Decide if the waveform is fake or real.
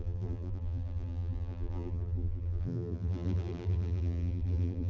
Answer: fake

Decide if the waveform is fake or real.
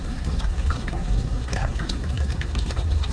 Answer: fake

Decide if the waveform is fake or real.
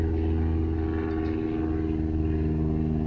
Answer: real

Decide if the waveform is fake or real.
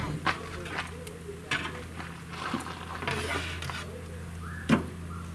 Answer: real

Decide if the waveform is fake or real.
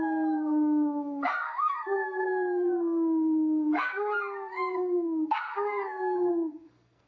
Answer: fake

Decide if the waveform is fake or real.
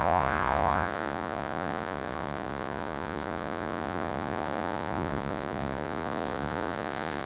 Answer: fake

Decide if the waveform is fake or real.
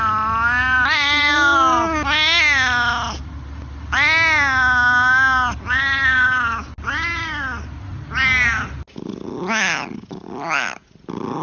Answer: real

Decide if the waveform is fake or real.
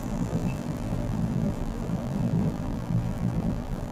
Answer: fake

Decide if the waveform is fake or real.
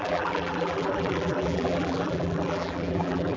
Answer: fake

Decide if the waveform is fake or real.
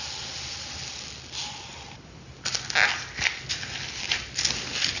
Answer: real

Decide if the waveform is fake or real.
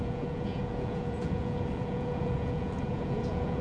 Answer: fake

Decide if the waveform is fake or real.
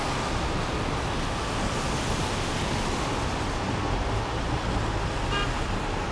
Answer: real